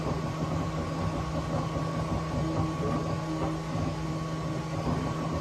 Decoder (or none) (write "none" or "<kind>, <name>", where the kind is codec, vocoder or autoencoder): none